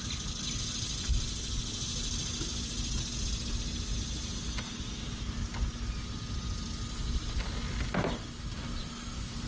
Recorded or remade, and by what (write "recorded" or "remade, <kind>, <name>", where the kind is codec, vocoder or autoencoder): recorded